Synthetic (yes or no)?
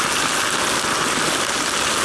no